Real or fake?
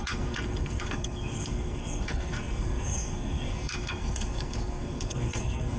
fake